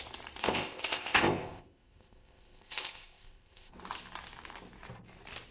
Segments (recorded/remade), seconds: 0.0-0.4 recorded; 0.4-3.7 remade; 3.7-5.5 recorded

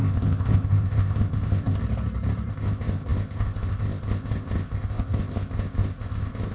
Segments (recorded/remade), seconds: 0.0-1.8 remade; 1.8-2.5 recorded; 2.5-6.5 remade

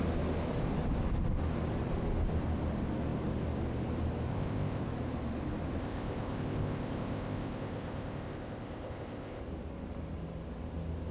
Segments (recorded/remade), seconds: 0.0-4.3 recorded; 4.3-4.8 remade; 4.8-5.8 recorded; 5.8-9.4 remade; 9.4-11.1 recorded

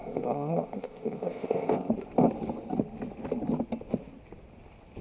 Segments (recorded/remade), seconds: 0.0-1.9 remade; 1.9-5.0 recorded

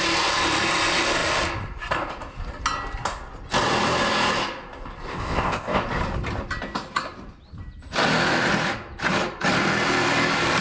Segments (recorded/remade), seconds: 0.0-5.1 recorded; 5.1-5.8 remade; 5.8-10.6 recorded

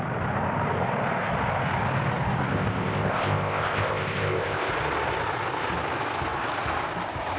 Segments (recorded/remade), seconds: 0.0-2.5 recorded; 2.5-4.7 remade; 4.7-7.4 recorded